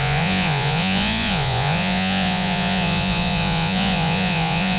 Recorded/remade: remade